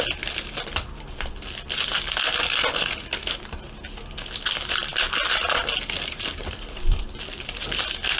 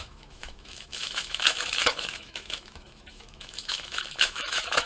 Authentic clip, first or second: first